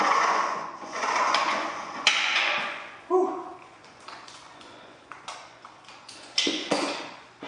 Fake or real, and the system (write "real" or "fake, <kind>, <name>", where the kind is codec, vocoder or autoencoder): fake, vocoder, Vocos